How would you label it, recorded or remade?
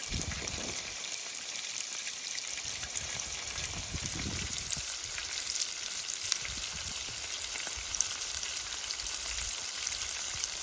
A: remade